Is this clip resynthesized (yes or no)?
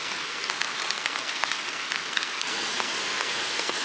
yes